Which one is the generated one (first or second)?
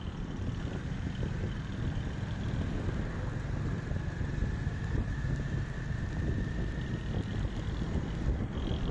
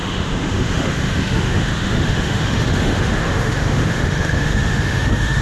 second